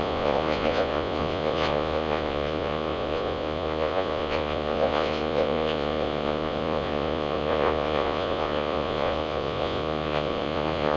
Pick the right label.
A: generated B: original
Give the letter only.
A